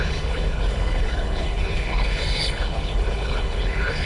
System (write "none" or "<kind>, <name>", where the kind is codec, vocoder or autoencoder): codec, HILCodec